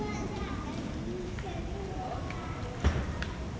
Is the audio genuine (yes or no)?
yes